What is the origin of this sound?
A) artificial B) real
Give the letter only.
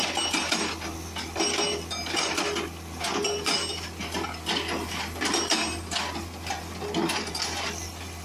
B